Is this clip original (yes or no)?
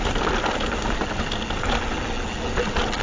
yes